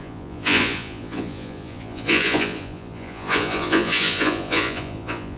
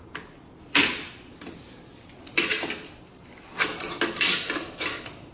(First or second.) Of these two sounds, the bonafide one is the second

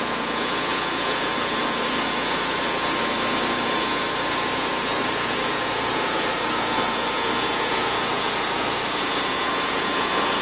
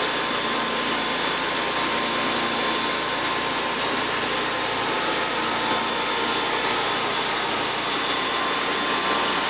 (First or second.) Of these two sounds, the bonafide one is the second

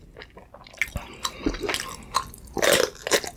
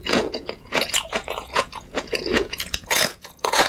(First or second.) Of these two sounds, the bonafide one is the first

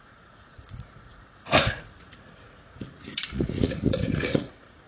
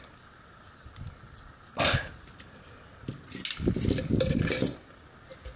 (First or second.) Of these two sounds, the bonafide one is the second